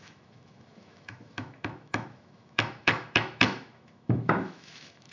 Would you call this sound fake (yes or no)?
yes